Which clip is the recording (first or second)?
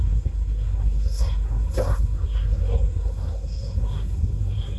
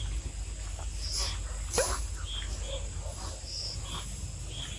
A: second